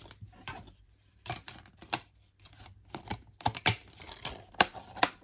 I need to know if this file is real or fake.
fake